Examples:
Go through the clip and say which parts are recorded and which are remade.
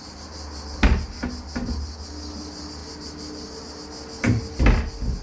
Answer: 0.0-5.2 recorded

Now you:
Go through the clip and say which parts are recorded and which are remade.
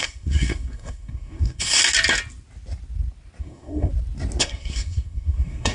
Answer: 0.0-1.8 remade; 1.8-3.4 recorded; 3.4-3.9 remade; 3.9-4.4 recorded; 4.4-5.7 remade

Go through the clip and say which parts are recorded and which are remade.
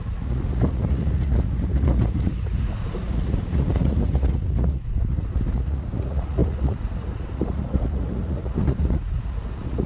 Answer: 0.0-9.9 remade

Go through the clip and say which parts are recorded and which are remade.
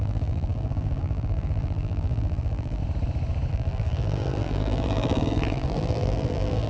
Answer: 0.0-2.8 remade; 2.8-3.5 recorded; 3.5-6.7 remade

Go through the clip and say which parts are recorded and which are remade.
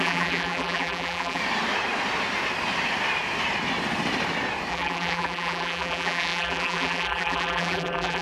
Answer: 0.0-1.4 remade; 1.4-4.7 recorded; 4.7-8.2 remade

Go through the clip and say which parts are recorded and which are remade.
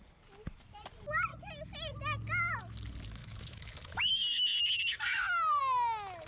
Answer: 0.0-3.2 recorded; 3.2-4.6 remade; 4.6-5.1 recorded; 5.1-5.6 remade; 5.6-6.3 recorded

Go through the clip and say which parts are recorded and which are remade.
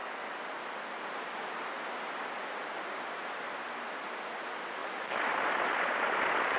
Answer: 0.0-6.6 recorded